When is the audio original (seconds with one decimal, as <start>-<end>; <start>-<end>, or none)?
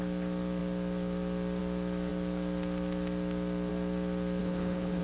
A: 0.0-4.4